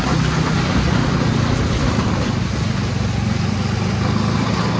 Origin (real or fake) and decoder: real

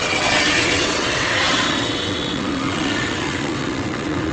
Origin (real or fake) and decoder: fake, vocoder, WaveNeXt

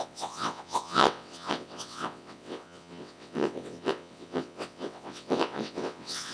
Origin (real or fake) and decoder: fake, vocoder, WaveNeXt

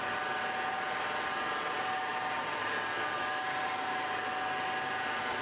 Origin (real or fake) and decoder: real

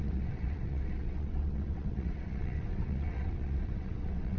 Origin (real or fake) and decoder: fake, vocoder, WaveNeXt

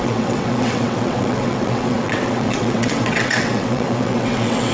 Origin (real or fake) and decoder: fake, vocoder, WaveNeXt